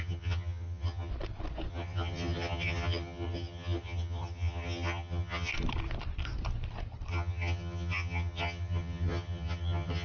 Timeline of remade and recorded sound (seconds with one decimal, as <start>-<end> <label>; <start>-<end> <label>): 0.0-1.1 remade; 1.1-1.7 recorded; 1.7-5.5 remade; 5.5-7.1 recorded; 7.1-10.0 remade